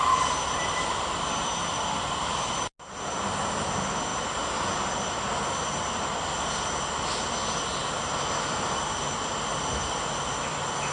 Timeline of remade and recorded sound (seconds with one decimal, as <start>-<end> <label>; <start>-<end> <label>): 0.0-10.9 recorded